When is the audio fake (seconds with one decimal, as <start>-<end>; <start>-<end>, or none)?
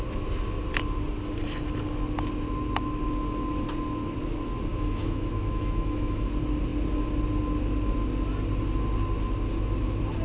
4.7-6.3